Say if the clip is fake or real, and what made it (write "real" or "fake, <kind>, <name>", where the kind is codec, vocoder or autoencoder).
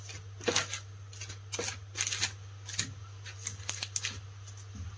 real